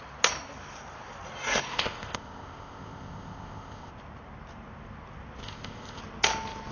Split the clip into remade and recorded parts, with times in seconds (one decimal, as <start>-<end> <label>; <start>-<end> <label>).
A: 0.0-1.7 recorded; 1.7-3.9 remade; 3.9-5.4 recorded; 5.4-6.0 remade; 6.0-6.7 recorded